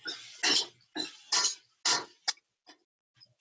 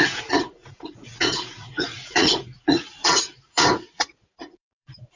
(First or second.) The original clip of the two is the first